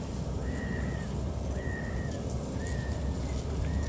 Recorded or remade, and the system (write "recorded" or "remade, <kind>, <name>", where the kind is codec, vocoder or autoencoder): recorded